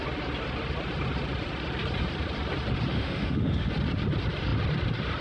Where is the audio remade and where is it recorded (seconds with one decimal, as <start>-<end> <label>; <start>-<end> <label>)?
0.0-2.9 recorded; 2.9-3.7 remade; 3.7-5.2 recorded